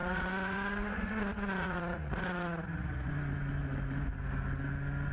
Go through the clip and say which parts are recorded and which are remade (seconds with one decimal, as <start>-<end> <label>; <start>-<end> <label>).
0.0-3.1 remade; 3.1-5.1 recorded